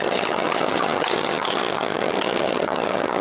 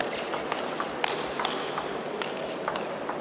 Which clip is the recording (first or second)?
second